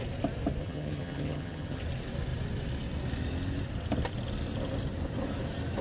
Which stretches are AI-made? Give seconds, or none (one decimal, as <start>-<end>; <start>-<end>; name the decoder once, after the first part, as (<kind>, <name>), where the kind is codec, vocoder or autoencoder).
0.6-1.8 (vocoder, HiFi-GAN)